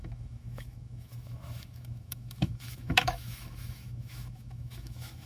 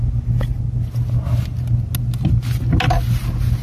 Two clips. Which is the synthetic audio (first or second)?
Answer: first